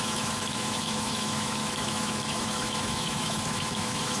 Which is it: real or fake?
fake